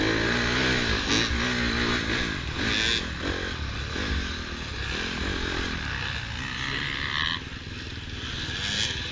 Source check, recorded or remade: recorded